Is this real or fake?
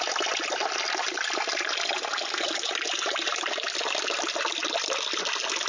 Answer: real